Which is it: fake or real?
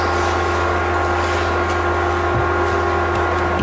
real